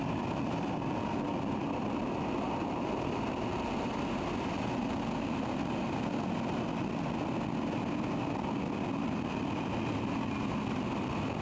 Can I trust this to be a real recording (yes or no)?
yes